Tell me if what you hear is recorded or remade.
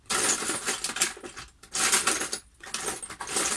recorded